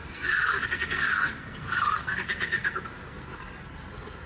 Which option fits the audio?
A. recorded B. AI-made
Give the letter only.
B